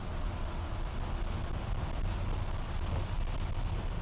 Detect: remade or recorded recorded